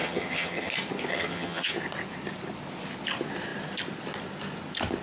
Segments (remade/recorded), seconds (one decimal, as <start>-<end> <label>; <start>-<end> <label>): 0.0-0.7 remade; 0.7-1.1 recorded; 1.1-1.7 remade; 1.7-5.0 recorded